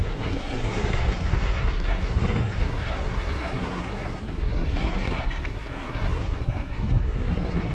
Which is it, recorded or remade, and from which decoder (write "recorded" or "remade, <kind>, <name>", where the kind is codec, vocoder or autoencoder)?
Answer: remade, codec, SNAC